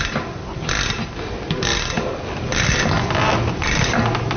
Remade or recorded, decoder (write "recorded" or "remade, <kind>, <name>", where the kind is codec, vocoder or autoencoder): recorded